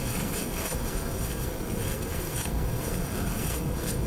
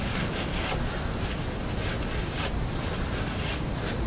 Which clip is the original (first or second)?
second